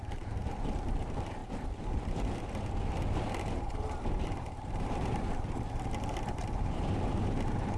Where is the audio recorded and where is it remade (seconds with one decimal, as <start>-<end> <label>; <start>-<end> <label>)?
0.0-1.4 remade; 1.4-4.2 recorded; 4.2-7.8 remade